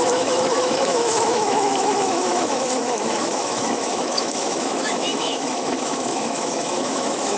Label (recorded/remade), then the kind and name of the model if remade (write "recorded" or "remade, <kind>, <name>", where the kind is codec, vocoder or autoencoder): remade, autoencoder, DAC-VAE